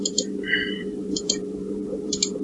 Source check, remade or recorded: remade